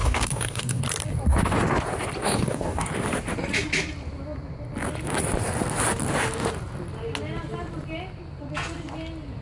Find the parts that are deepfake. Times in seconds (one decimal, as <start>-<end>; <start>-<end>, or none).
0.0-0.8; 2.2-2.9